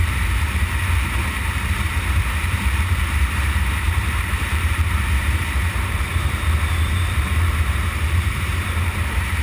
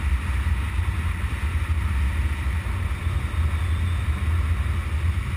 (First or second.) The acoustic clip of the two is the second